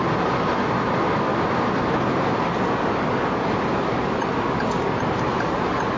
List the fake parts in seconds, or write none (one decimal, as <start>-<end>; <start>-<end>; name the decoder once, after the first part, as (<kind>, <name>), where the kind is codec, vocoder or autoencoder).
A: none